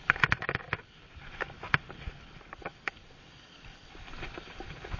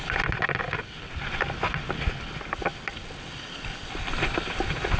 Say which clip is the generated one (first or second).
first